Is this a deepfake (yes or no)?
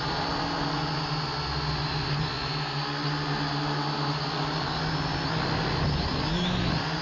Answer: no